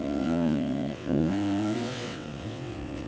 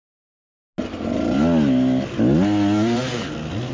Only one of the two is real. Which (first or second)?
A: second